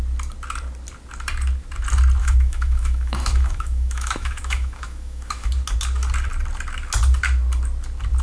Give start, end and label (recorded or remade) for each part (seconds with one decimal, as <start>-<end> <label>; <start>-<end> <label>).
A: 0.0-2.2 recorded; 2.2-5.5 remade; 5.5-8.2 recorded